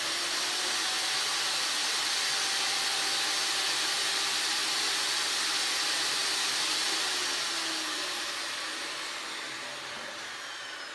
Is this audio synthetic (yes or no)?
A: no